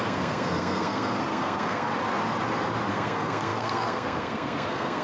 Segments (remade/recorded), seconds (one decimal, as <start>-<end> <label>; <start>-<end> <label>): 0.0-1.9 remade; 1.9-2.9 recorded; 2.9-5.0 remade